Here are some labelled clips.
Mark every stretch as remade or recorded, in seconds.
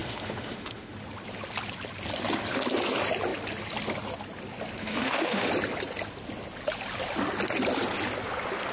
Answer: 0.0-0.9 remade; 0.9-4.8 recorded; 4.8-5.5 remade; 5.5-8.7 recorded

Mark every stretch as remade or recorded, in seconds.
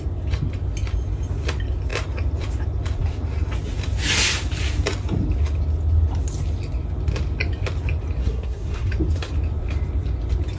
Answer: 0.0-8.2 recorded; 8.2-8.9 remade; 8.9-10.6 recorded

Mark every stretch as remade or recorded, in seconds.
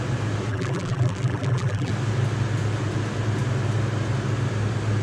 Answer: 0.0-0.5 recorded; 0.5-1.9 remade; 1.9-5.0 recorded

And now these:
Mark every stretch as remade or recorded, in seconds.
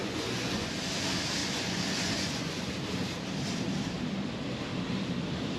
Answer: 0.0-0.7 remade; 0.7-1.4 recorded; 1.4-2.7 remade; 2.7-5.6 recorded